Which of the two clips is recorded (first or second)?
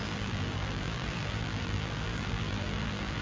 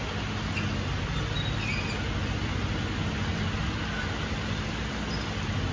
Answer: second